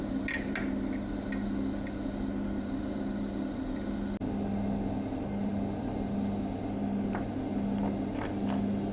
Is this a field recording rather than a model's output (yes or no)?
yes